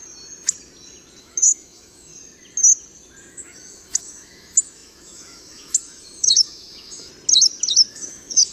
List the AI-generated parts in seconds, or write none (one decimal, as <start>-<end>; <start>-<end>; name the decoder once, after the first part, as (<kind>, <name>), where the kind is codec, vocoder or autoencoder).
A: 1.2-2.1 (autoencoder, DAC-VAE); 3.3-7.1; 7.9-8.5